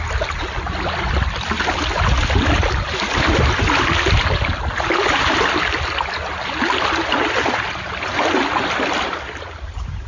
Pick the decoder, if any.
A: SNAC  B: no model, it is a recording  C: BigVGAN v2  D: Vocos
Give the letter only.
B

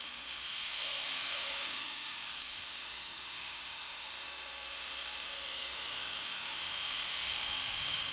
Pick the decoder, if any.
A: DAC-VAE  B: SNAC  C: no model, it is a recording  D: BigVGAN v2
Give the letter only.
A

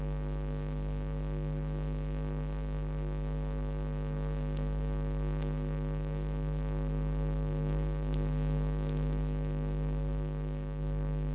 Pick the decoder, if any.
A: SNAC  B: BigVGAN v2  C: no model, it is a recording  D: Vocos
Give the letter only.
A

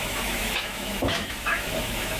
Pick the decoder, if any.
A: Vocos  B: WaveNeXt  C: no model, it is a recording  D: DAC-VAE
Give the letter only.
D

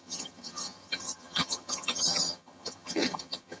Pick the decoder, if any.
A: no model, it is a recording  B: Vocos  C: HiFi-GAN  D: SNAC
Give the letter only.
C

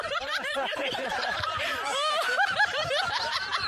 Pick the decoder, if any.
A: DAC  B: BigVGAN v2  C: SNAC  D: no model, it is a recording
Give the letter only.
B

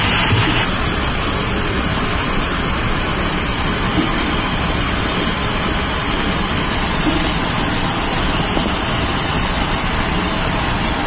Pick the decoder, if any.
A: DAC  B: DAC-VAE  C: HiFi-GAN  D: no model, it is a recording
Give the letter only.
D